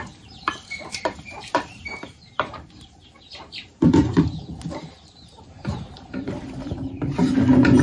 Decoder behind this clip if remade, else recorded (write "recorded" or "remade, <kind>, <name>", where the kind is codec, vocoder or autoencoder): remade, vocoder, BigVGAN v2